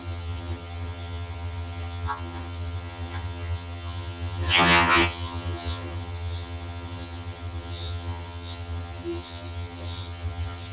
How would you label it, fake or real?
fake